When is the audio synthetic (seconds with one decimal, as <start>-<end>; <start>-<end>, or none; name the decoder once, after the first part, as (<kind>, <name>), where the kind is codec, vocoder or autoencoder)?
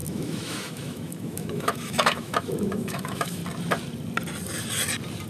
0.0-3.4 (autoencoder, DAC-VAE)